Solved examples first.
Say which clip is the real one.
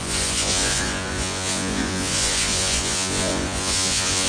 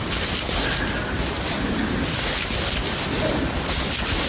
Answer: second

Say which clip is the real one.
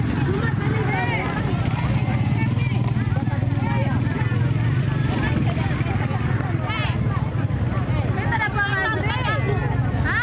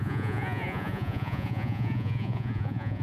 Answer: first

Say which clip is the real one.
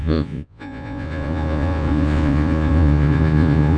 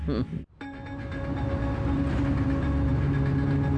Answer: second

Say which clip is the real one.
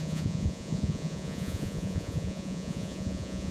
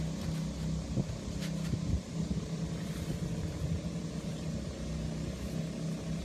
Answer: second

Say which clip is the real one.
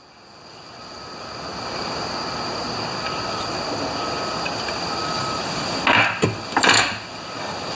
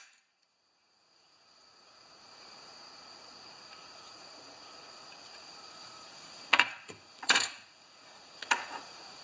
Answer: first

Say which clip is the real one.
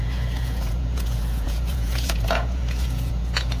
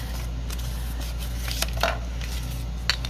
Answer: second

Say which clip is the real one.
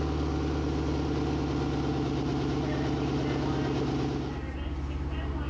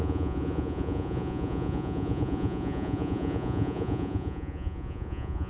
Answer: first